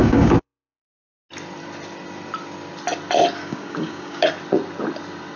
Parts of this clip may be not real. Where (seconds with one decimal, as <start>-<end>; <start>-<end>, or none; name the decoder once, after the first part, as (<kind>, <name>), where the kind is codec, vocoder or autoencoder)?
0.0-1.1 (codec, DAC); 3.4-4.3